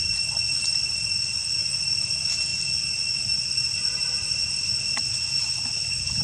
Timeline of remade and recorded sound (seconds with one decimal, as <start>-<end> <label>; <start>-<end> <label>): 0.0-6.2 recorded